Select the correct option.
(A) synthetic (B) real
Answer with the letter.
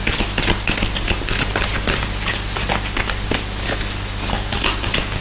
B